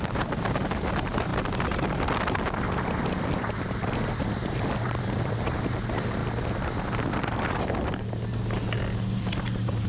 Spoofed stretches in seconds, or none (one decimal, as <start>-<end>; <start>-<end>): 0.0-1.3; 4.2-6.2; 9.2-9.9